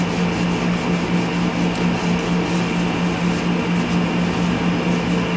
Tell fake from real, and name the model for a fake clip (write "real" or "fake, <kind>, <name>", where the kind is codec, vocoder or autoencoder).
real